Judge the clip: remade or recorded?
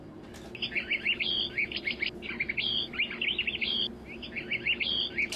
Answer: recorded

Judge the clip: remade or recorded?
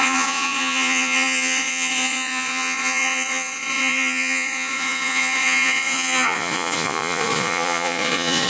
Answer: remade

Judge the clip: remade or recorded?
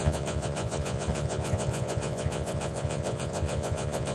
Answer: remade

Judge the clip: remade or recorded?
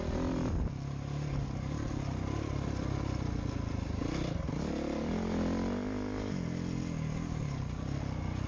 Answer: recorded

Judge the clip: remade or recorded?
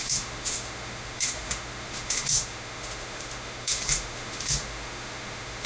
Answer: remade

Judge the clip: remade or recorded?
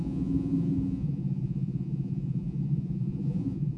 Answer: remade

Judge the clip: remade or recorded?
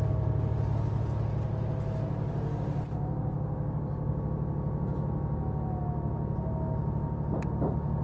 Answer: recorded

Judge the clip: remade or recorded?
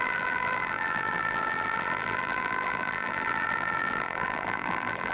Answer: remade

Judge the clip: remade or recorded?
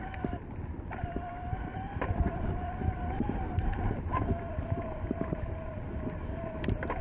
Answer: recorded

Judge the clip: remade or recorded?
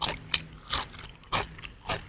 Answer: recorded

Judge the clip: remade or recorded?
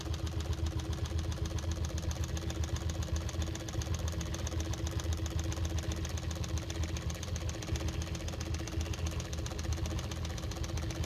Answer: recorded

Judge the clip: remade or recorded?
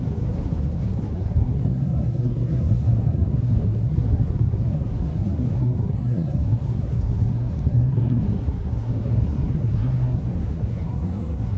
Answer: remade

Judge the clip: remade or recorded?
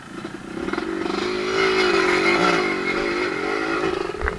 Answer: recorded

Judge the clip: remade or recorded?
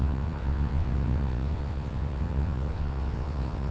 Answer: remade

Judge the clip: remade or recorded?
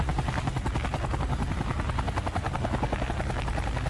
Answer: recorded